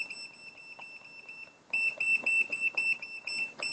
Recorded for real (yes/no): yes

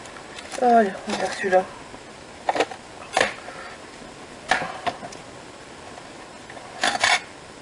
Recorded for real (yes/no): yes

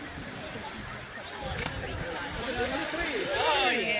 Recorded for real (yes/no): yes